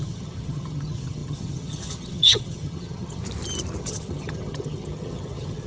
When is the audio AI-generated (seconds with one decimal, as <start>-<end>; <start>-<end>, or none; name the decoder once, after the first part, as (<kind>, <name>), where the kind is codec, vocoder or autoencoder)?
0.0-3.2 (vocoder, HiFi-GAN); 3.8-5.7